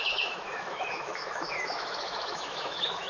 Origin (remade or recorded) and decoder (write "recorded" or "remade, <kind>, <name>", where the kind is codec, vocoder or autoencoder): remade, autoencoder, DAC-VAE